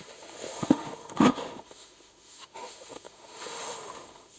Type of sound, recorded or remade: remade